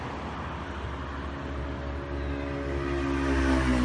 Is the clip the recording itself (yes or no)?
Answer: yes